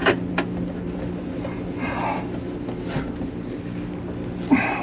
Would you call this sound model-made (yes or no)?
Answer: no